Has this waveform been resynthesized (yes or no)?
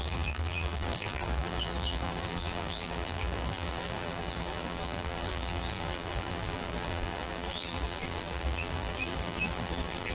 yes